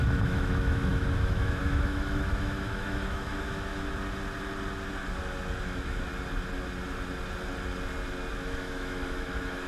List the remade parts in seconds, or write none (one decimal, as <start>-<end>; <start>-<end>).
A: 0.0-3.7; 5.6-6.1; 8.3-9.7